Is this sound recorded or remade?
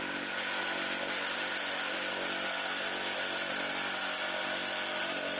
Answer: recorded